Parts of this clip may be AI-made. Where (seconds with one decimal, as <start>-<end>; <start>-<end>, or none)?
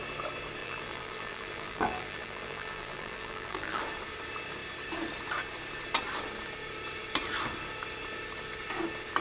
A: 0.6-3.8